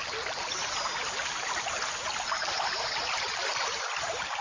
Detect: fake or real real